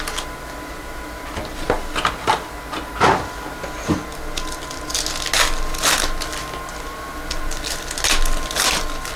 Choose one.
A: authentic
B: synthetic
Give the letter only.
A